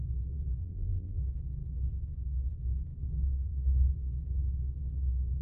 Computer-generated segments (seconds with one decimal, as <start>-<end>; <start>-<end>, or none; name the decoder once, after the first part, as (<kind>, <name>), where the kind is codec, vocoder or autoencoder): 0.6-1.2 (vocoder, BigVGAN v2)